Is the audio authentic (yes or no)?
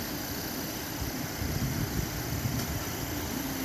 yes